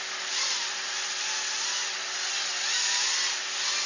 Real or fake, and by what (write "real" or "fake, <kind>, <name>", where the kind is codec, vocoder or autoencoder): real